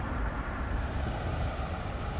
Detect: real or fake fake